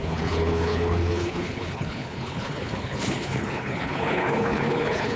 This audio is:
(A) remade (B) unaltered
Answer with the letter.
A